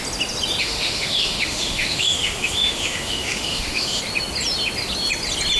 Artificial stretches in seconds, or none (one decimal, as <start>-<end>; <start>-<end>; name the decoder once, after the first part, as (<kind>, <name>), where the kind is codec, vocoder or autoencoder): 0.6-4.0 (autoencoder, DAC-VAE)